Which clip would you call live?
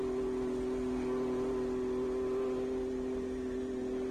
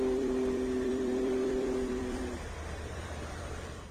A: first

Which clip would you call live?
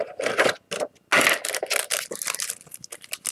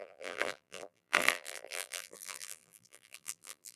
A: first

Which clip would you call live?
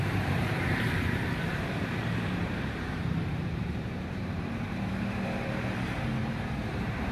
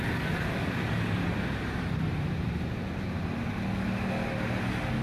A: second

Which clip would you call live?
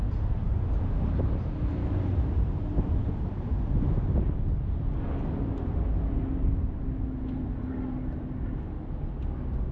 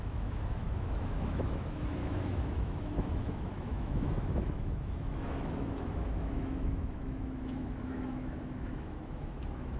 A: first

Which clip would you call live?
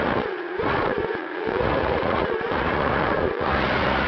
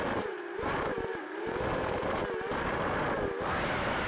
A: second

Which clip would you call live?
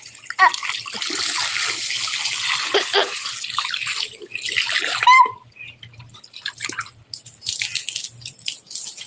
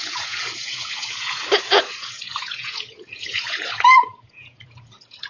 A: first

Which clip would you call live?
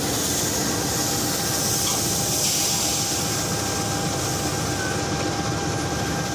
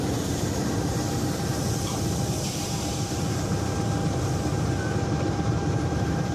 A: first